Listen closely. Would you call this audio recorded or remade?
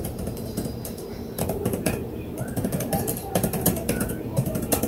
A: remade